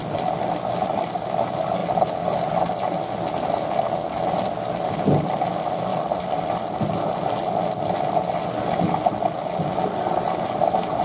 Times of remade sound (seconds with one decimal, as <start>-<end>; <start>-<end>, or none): 5.9-7.1